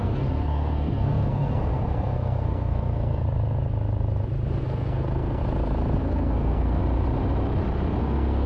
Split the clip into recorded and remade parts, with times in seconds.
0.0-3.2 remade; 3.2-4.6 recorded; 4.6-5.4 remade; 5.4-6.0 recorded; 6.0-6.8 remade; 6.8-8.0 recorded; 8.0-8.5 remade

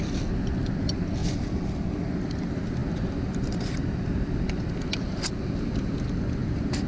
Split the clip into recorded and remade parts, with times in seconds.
0.0-6.9 recorded

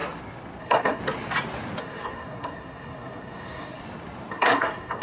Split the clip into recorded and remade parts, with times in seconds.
0.0-0.6 recorded; 0.6-1.0 remade; 1.0-1.8 recorded; 1.8-3.8 remade; 3.8-4.3 recorded; 4.3-5.0 remade

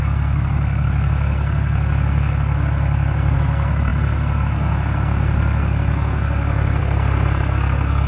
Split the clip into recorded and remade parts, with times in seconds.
0.0-8.1 remade

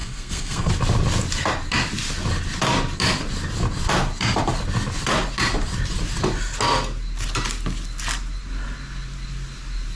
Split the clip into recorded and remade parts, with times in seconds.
0.0-0.7 remade; 0.7-10.0 recorded

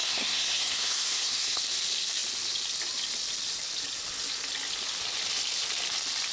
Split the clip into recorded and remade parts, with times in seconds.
0.0-1.6 remade; 1.6-6.3 recorded

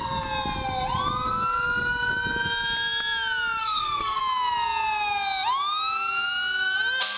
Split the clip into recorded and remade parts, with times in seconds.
0.0-3.6 recorded; 3.6-4.2 remade; 4.2-7.2 recorded